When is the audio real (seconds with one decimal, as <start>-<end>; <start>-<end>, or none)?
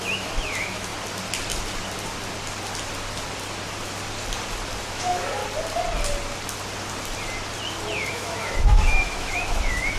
0.9-4.8; 5.4-8.1